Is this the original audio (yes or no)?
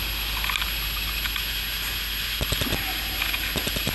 yes